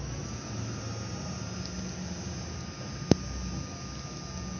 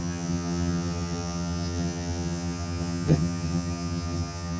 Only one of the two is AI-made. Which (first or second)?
second